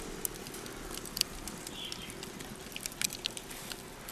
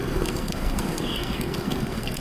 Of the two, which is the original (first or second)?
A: first